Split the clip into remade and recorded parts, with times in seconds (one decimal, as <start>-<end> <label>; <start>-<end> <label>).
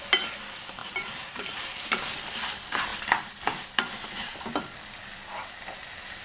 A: 0.0-0.8 recorded; 0.8-2.0 remade; 2.0-6.2 recorded